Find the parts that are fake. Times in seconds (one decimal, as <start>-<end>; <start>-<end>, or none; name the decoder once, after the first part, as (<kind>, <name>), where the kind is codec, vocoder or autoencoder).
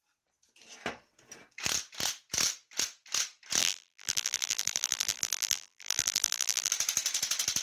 3.6-6.7 (vocoder, BigVGAN v2)